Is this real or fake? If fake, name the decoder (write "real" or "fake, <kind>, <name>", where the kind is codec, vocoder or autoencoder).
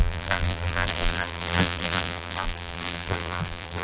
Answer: fake, vocoder, BigVGAN v2